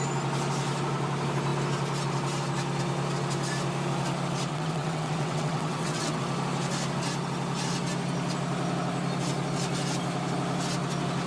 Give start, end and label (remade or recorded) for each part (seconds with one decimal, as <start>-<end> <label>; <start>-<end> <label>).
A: 0.0-4.5 recorded; 4.5-6.2 remade; 6.2-11.3 recorded